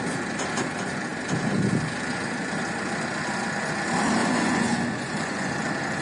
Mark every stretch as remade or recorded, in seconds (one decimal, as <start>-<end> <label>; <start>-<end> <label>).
0.0-4.2 recorded; 4.2-5.5 remade; 5.5-6.0 recorded